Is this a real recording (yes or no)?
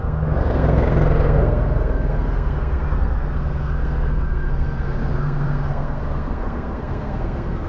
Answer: no